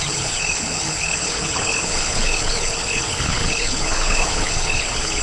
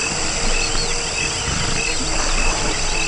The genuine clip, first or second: second